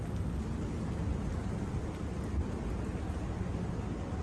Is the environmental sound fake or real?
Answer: real